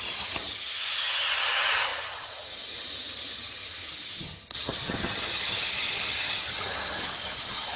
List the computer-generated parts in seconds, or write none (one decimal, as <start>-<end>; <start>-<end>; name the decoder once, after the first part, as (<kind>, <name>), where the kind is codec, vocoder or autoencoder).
0.0-7.8 (vocoder, HiFi-GAN)